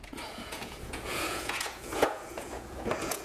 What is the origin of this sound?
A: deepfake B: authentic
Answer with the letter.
A